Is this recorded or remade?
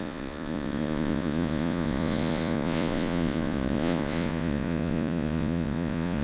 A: remade